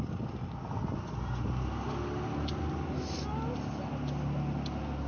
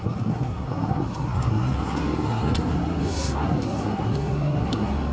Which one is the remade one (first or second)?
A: second